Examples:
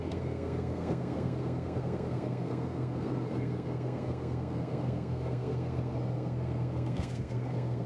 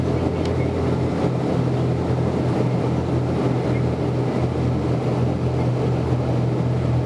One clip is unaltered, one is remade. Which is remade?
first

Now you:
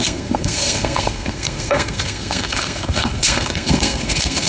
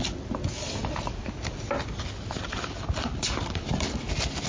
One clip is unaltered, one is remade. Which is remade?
first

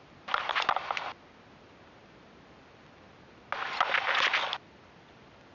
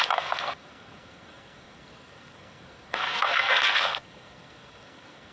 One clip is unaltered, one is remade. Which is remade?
second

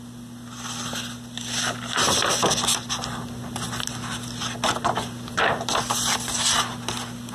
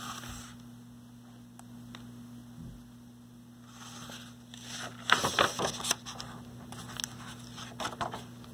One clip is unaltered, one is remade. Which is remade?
first